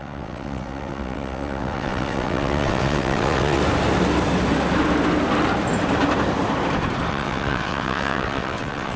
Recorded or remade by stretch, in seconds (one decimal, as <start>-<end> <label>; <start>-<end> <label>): 0.0-3.6 remade; 3.6-7.1 recorded; 7.1-9.0 remade